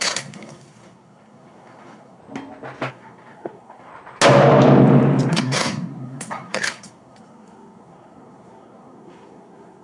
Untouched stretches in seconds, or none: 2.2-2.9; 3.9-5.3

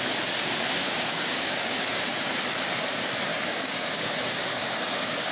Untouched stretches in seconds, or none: 0.0-0.8; 2.3-3.3

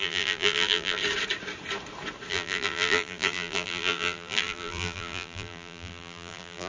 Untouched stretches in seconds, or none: 1.0-2.3

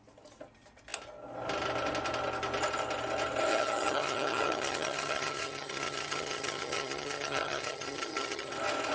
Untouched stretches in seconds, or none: 0.0-3.5; 8.5-8.9

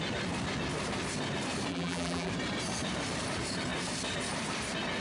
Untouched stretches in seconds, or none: 0.0-1.7; 2.3-5.0

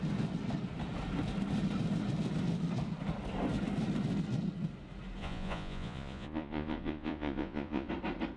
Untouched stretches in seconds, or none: 0.0-5.2; 7.9-8.4

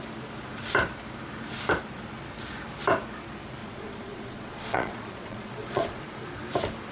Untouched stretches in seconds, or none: 0.0-3.6; 6.0-6.9

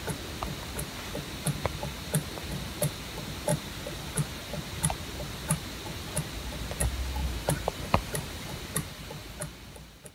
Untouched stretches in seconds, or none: 0.0-2.2; 3.0-7.2; 8.6-10.1